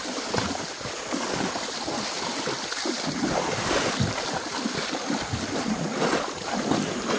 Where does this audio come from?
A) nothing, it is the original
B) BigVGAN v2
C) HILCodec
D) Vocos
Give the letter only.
A